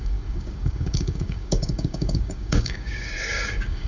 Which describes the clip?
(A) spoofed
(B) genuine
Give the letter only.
A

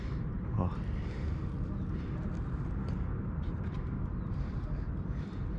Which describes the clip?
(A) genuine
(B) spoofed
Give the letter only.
A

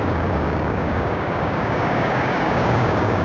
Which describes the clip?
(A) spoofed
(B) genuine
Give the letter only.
A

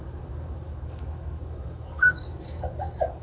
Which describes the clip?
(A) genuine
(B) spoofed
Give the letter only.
B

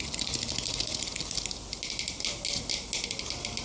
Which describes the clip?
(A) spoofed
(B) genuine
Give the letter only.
B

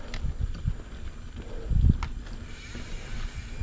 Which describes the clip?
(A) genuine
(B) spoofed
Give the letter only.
A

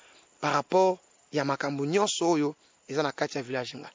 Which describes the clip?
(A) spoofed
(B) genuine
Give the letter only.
B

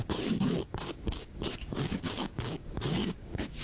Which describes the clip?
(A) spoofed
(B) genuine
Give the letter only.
A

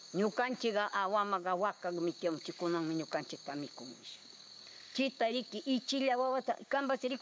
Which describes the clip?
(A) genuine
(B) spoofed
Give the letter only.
B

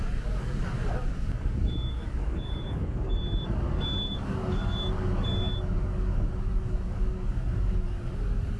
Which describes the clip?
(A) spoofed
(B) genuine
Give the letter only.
A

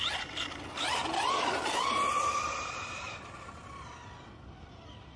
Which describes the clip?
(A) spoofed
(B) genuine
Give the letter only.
B